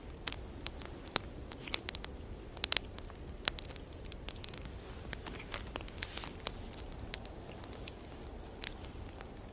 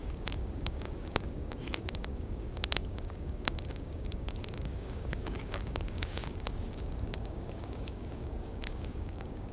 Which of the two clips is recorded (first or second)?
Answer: first